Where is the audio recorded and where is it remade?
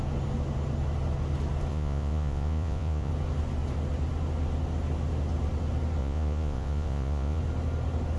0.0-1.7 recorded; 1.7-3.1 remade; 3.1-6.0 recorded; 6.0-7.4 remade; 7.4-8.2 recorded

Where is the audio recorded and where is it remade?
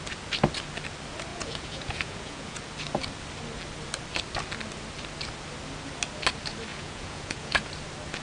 0.0-1.3 recorded; 1.3-2.6 remade; 2.6-6.7 recorded; 6.7-7.7 remade; 7.7-8.2 recorded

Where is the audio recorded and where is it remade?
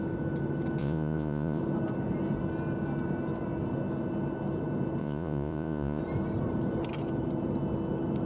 0.0-0.8 recorded; 0.8-1.6 remade; 1.6-5.0 recorded; 5.0-6.0 remade; 6.0-8.3 recorded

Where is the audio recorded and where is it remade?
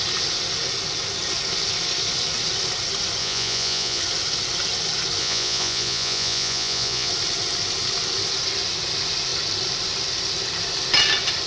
0.0-3.2 recorded; 3.2-4.0 remade; 4.0-5.2 recorded; 5.2-7.1 remade; 7.1-11.5 recorded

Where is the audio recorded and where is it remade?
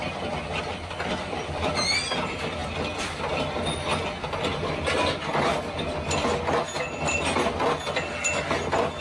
0.0-9.0 recorded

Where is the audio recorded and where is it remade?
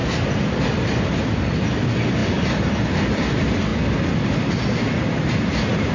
0.0-5.9 recorded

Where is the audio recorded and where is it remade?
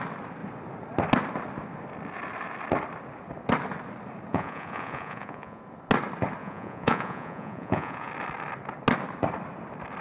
0.0-4.3 recorded; 4.3-5.6 remade; 5.6-6.4 recorded; 6.4-8.1 remade; 8.1-10.0 recorded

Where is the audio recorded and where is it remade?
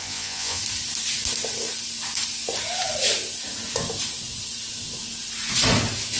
0.0-0.6 remade; 0.6-6.2 recorded